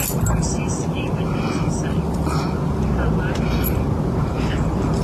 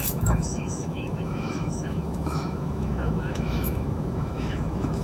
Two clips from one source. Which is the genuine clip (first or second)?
first